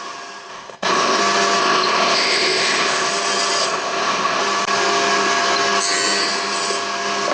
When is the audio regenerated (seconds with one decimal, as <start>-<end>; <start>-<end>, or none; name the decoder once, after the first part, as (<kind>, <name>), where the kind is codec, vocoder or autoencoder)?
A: 0.5-1.2 (codec, ZipCodec); 1.6-3.1; 3.6-4.4